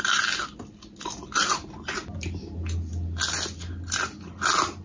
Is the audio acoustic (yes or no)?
yes